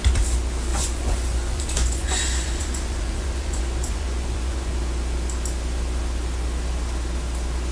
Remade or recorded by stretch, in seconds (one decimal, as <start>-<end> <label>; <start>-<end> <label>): 0.0-0.7 recorded; 0.7-4.7 remade; 4.7-7.7 recorded